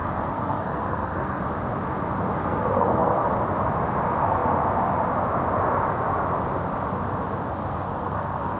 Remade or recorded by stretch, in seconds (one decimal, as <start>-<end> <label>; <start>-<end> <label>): 0.0-1.4 remade; 1.4-2.4 recorded; 2.4-3.2 remade; 3.2-7.6 recorded; 7.6-8.6 remade